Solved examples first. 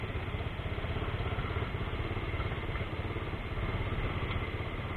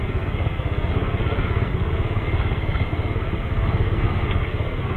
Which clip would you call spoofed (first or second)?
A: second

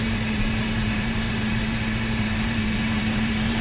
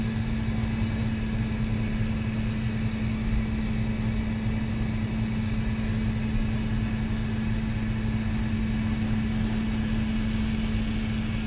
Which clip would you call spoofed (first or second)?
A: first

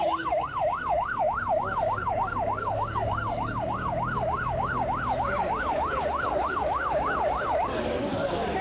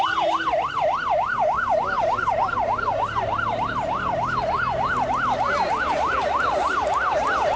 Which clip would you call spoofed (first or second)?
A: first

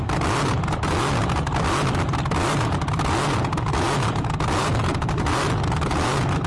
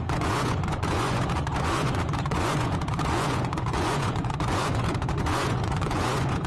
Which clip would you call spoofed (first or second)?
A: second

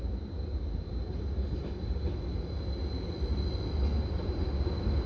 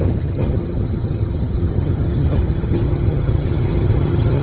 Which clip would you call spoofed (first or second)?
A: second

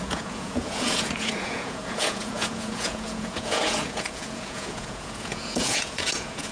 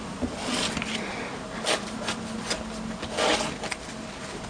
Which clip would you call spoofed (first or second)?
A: first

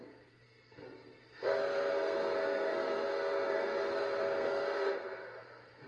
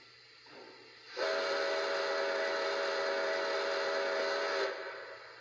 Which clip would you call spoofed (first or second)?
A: first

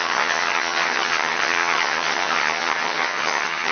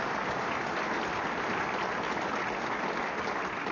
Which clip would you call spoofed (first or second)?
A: first